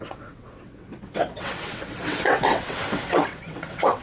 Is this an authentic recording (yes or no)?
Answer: no